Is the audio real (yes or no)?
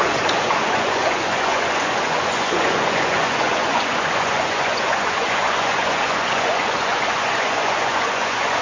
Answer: no